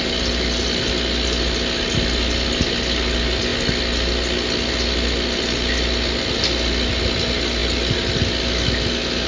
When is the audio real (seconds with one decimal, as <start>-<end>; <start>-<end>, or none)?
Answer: 0.0-9.3